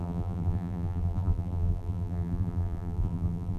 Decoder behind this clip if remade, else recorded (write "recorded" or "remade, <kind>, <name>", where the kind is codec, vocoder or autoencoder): remade, vocoder, BigVGAN v2